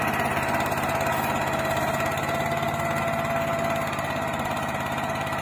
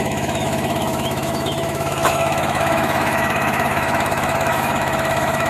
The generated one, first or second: second